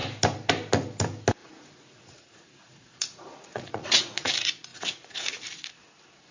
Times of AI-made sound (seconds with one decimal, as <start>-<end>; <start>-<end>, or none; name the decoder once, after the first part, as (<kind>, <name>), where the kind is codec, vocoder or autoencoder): 1.4-4.3 (vocoder, Vocos); 4.7-5.4

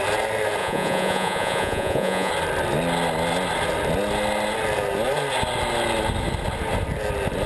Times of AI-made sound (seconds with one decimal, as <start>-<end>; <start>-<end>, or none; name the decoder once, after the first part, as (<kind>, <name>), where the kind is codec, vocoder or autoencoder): 0.6-2.3 (vocoder, Vocos)